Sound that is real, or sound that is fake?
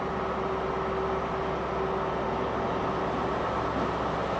real